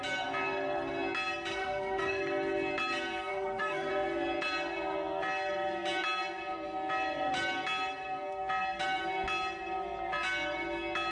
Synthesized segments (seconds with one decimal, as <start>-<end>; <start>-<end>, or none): 1.5-2.2; 3.3-3.9